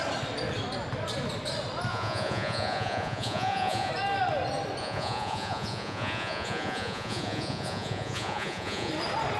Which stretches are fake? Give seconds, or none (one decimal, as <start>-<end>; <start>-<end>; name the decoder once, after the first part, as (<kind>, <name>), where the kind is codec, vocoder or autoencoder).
1.9-3.9 (vocoder, Vocos); 4.8-8.9